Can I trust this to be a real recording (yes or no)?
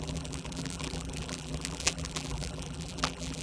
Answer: no